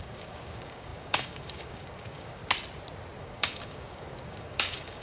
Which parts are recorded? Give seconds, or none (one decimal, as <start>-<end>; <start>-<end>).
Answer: 2.4-3.2

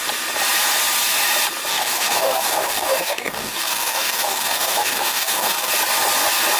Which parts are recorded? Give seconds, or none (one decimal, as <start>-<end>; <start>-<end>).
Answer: 0.0-1.7; 5.7-6.6

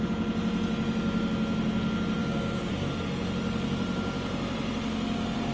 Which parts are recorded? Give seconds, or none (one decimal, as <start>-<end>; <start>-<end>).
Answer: 0.0-2.2; 2.7-5.5

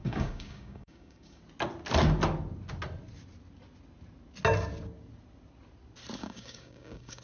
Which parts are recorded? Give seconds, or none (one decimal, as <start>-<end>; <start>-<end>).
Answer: 1.4-6.2